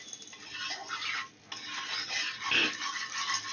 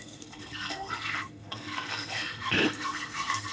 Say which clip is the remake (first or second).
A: second